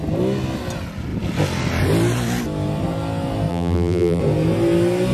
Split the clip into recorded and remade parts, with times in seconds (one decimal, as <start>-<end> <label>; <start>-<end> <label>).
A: 0.0-3.5 recorded; 3.5-4.2 remade; 4.2-5.1 recorded

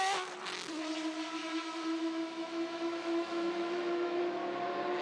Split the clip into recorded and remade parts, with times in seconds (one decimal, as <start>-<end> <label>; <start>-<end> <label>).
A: 0.0-1.4 recorded; 1.4-4.2 remade; 4.2-5.0 recorded

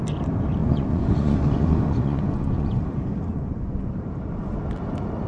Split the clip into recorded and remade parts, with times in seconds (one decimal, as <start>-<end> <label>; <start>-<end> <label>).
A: 0.0-0.6 recorded; 0.6-2.8 remade; 2.8-3.3 recorded; 3.3-3.9 remade; 3.9-5.3 recorded

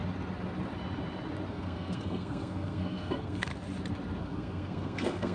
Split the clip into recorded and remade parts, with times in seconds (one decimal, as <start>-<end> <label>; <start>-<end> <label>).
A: 0.0-1.5 recorded; 1.5-3.5 remade; 3.5-4.2 recorded; 4.2-5.3 remade

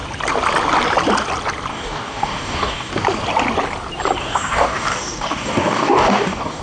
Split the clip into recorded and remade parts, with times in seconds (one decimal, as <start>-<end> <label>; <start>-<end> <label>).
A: 0.0-1.7 recorded; 1.7-2.9 remade; 2.9-4.2 recorded; 4.2-6.6 remade

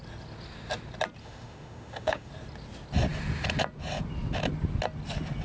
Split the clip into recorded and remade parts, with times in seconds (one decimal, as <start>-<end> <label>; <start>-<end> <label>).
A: 0.0-1.2 recorded; 1.2-2.3 remade; 2.3-5.4 recorded